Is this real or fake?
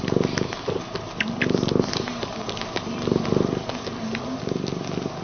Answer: real